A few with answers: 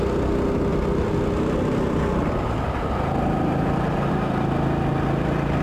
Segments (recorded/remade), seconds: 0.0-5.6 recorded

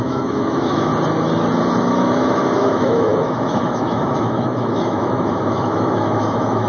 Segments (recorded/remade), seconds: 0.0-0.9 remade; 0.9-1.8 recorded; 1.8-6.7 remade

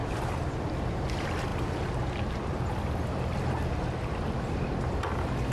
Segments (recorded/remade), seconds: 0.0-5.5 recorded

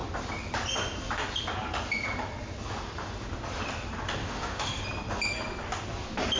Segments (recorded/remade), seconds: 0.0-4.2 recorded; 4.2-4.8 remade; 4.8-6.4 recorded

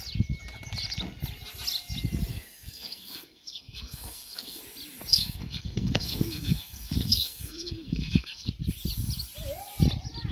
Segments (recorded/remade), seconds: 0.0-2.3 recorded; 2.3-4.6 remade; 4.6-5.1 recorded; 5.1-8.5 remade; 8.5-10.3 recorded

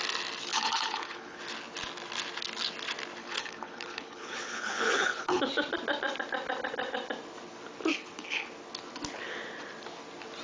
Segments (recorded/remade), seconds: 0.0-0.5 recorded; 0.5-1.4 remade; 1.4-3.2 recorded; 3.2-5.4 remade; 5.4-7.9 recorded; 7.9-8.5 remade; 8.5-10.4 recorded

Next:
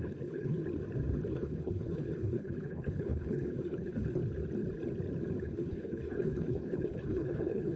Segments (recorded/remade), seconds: 0.0-0.6 remade; 0.6-1.3 recorded; 1.3-4.2 remade; 4.2-5.4 recorded; 5.4-7.8 remade

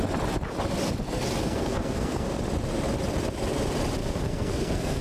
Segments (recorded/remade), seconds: 0.0-1.4 recorded; 1.4-2.4 remade; 2.4-4.0 recorded; 4.0-5.0 remade